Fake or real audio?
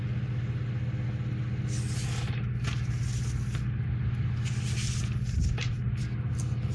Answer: real